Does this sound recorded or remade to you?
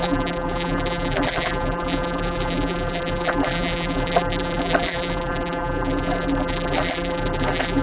remade